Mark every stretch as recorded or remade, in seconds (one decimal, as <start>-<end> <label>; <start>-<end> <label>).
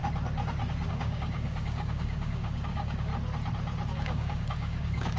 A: 0.0-0.9 recorded; 0.9-3.1 remade; 3.1-3.9 recorded; 3.9-5.2 remade